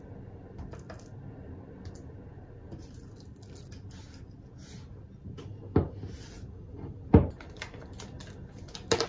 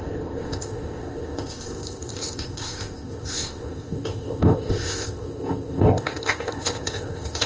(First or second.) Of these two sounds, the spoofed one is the second